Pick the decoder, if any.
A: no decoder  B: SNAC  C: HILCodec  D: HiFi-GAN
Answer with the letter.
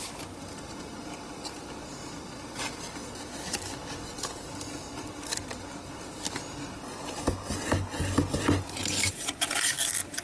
A